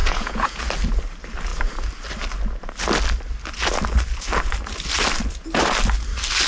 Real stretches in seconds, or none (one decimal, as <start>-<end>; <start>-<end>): 0.7-6.5